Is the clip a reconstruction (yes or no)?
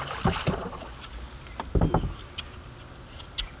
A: no